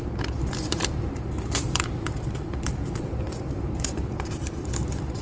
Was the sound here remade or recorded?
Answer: remade